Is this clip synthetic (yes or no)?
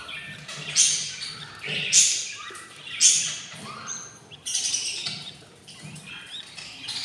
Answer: no